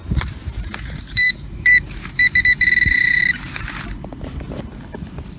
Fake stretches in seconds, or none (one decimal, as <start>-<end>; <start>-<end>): 0.0-3.2